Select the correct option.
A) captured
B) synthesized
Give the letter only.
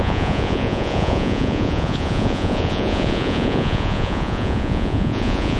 B